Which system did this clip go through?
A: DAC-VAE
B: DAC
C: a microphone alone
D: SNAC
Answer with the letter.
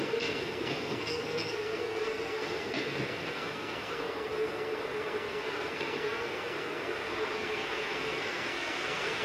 D